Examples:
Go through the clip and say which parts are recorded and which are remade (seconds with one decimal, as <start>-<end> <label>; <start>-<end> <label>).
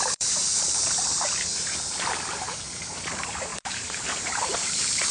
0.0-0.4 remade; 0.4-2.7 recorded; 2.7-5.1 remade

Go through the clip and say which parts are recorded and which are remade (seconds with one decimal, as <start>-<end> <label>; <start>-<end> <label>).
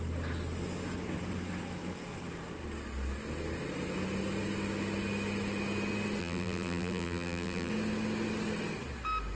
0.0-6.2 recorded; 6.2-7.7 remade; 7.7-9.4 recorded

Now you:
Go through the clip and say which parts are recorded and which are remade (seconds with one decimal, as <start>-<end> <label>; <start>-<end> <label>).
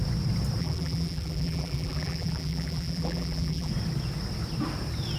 0.0-0.6 recorded; 0.6-3.7 remade; 3.7-5.2 recorded